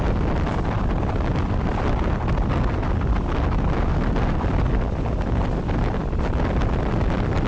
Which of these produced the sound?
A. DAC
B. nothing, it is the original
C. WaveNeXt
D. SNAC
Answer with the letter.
B